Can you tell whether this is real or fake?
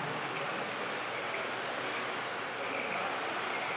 real